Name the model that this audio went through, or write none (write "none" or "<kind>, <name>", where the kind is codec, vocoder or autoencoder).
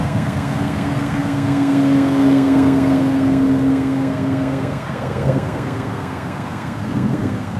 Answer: codec, SNAC